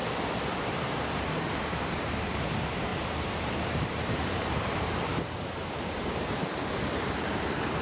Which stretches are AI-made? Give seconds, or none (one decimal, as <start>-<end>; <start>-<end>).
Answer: 0.5-7.8